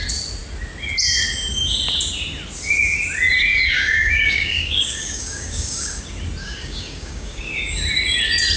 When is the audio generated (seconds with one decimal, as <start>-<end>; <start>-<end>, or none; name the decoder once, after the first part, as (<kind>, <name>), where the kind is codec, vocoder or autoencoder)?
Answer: 3.5-6.0 (codec, DAC); 6.4-7.6